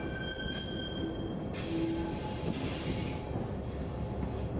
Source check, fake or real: real